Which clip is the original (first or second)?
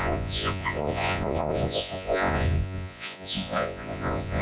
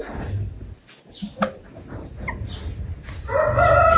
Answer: second